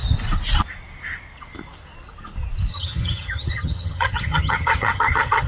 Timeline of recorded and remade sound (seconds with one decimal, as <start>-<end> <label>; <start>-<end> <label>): 0.0-2.7 recorded; 2.7-5.5 remade